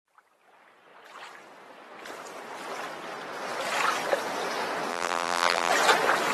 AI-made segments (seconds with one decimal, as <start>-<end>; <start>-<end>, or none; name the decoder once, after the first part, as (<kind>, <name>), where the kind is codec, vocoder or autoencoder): 4.9-5.7 (vocoder, BigVGAN v2)